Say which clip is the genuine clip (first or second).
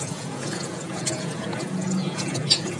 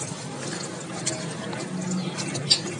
second